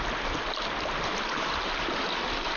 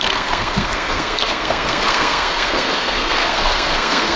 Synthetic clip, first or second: second